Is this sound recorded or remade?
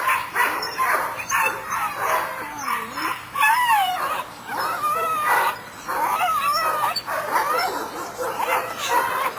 remade